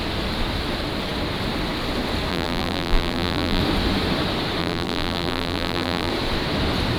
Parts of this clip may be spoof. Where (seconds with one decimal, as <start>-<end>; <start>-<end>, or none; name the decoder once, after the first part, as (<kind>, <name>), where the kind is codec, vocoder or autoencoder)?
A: 2.3-3.6 (vocoder, BigVGAN v2); 4.6-6.1